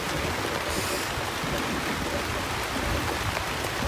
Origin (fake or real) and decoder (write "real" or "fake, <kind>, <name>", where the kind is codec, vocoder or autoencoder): real